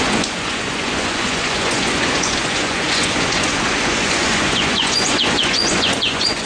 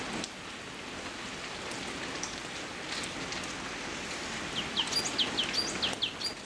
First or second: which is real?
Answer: second